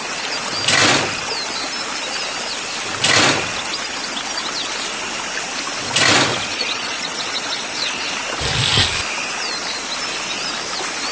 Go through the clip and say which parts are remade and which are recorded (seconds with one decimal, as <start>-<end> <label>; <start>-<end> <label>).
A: 0.0-6.3 recorded; 6.3-8.1 remade; 8.1-11.1 recorded